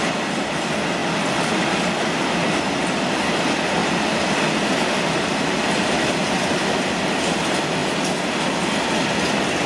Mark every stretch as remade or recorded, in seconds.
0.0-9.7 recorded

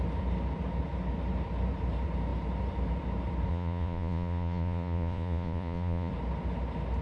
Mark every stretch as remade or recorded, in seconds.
0.0-3.5 recorded; 3.5-6.1 remade; 6.1-7.0 recorded